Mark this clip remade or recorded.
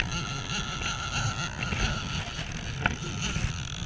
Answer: recorded